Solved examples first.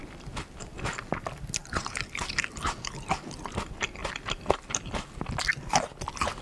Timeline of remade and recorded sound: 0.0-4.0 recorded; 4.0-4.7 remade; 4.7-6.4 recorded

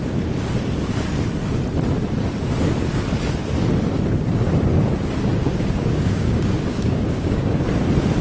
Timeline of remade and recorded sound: 0.0-5.4 recorded; 5.4-7.4 remade; 7.4-8.2 recorded

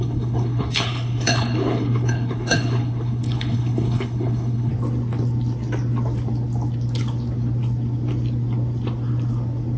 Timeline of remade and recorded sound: 0.0-4.7 remade; 4.7-9.8 recorded

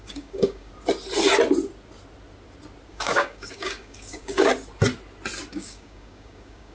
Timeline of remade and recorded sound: 0.0-0.7 remade; 0.7-2.9 recorded; 2.9-4.5 remade; 4.5-5.5 recorded; 5.5-6.7 remade

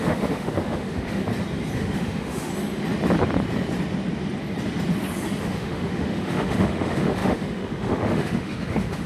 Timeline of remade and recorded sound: 0.0-1.2 remade; 1.2-1.8 recorded; 1.8-2.5 remade; 2.5-5.4 recorded; 5.4-9.1 remade

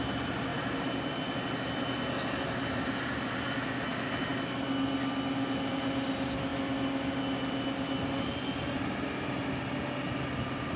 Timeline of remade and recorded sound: 0.0-10.8 recorded

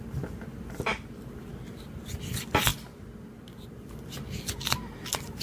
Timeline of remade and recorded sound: 0.0-5.4 recorded

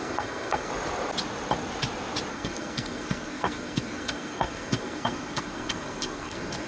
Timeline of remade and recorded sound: 0.0-0.7 remade; 0.7-2.3 recorded; 2.3-6.7 remade